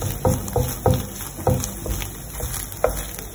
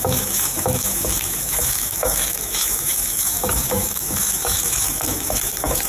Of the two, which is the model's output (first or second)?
second